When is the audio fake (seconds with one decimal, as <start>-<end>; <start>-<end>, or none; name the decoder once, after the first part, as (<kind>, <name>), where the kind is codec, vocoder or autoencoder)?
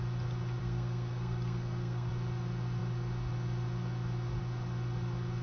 0.6-2.1 (codec, SNAC)